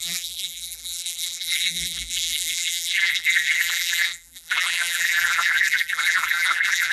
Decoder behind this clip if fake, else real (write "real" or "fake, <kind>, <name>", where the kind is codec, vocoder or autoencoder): fake, vocoder, BigVGAN v2